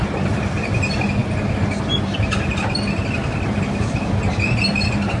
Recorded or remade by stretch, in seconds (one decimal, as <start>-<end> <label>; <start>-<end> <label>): 0.0-5.2 recorded